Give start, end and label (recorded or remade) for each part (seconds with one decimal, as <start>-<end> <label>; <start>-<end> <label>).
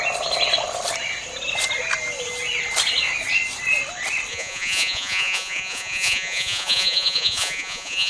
0.0-4.3 recorded; 4.3-8.1 remade